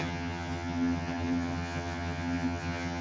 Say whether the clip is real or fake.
fake